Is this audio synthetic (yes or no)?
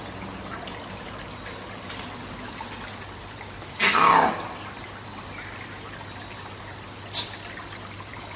no